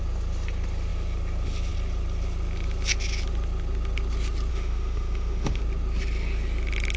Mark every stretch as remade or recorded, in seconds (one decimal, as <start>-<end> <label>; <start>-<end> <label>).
0.0-4.5 recorded; 4.5-5.6 remade; 5.6-7.0 recorded